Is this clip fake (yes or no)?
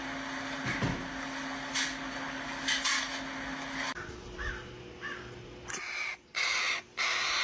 no